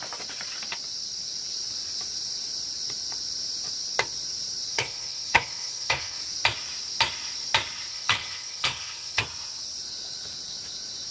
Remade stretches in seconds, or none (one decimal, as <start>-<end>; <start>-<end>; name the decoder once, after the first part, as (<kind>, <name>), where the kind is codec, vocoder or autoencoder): 4.7-6.2 (codec, HILCodec); 7.9-9.2